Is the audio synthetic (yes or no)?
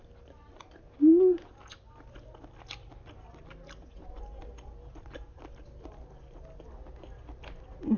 no